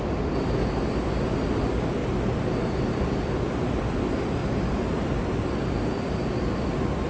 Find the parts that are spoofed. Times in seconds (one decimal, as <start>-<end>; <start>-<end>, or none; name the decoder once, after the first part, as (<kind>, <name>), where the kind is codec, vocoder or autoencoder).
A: none

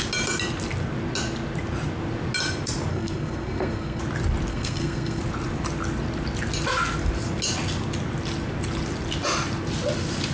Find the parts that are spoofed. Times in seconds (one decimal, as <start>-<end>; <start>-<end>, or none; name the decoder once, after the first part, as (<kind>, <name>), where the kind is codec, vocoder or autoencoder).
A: 2.9-4.0 (codec, SNAC); 4.5-5.2

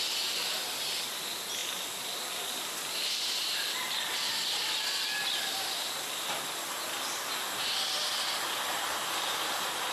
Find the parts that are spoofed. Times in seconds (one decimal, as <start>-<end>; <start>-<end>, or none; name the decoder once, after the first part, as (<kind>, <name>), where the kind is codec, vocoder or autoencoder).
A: none

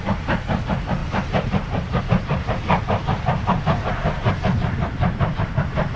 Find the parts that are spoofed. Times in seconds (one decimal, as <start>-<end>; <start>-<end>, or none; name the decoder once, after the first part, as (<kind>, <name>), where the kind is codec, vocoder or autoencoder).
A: 1.0-2.0 (vocoder, BigVGAN v2)

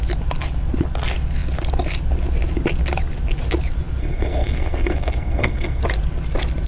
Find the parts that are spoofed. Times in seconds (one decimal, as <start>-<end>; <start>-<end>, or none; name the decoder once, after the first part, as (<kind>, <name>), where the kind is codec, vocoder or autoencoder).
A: 4.0-5.8 (codec, SNAC)